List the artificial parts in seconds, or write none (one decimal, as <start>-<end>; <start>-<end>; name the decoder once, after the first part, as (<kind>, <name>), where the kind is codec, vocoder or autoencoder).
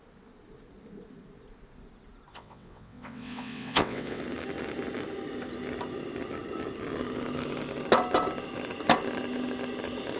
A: 2.3-4.2 (vocoder, WaveNeXt)